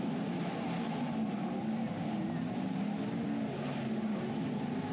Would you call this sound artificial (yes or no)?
no